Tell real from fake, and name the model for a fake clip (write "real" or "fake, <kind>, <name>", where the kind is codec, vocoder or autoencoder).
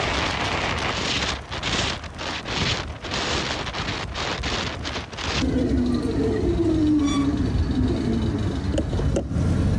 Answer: real